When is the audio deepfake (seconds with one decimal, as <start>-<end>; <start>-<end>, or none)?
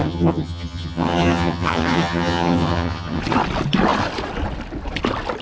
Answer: 0.0-3.2